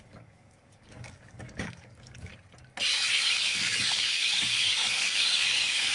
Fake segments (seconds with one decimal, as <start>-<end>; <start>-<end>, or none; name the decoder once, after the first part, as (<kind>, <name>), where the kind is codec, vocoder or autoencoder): 0.0-2.3 (codec, DAC); 3.2-5.9